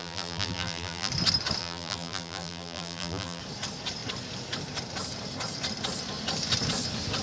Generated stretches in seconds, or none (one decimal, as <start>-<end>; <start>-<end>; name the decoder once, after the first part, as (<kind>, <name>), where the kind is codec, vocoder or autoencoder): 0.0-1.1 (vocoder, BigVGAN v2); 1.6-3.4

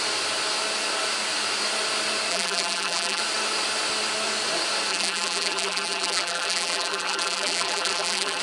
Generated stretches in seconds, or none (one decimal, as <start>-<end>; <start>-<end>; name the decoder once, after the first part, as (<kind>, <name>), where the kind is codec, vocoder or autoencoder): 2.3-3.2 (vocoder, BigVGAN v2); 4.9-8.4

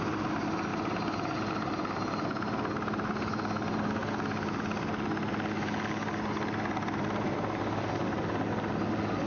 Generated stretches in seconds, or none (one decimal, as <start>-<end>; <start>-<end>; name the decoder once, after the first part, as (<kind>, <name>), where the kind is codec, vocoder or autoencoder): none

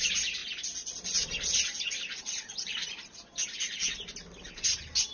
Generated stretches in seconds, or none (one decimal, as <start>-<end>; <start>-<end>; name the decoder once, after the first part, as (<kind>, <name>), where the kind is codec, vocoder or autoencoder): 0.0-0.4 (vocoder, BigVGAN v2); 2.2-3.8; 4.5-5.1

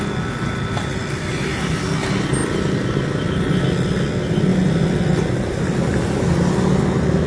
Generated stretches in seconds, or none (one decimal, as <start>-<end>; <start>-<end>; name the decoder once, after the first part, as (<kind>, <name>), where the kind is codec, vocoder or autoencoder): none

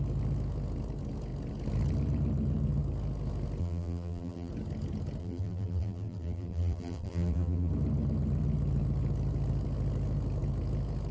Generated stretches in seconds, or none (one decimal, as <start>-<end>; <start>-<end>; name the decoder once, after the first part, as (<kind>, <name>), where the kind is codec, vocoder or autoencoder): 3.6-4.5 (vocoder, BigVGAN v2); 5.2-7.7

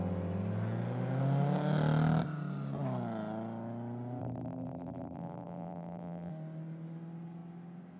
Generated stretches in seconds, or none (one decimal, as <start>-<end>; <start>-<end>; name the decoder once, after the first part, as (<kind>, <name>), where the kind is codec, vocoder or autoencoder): 4.2-6.3 (vocoder, BigVGAN v2)

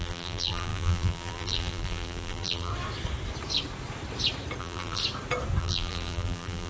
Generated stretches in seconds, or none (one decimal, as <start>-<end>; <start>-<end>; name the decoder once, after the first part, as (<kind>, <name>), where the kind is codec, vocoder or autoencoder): 0.0-2.7 (vocoder, BigVGAN v2); 4.6-5.0; 5.6-6.7